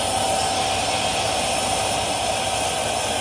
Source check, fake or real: real